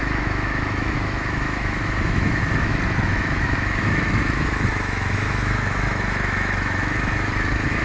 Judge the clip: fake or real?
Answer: fake